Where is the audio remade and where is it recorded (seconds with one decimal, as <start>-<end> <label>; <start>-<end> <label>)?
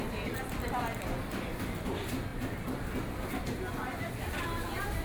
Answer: 0.0-5.0 remade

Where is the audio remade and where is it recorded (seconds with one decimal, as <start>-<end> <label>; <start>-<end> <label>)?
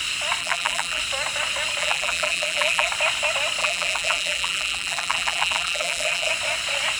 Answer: 0.0-0.4 recorded; 0.4-1.0 remade; 1.0-1.8 recorded; 1.8-2.9 remade; 2.9-3.6 recorded; 3.6-6.3 remade; 6.3-7.0 recorded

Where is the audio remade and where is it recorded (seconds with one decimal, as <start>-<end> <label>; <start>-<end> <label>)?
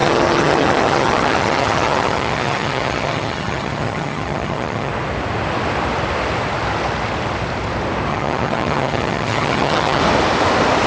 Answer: 0.0-4.9 remade; 4.9-8.1 recorded; 8.1-10.0 remade; 10.0-10.9 recorded